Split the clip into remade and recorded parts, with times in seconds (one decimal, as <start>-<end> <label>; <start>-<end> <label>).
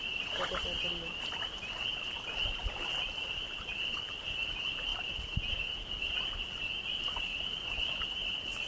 0.0-4.9 recorded; 4.9-5.9 remade; 5.9-8.7 recorded